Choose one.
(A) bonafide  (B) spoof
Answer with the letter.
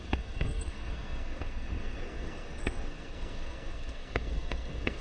B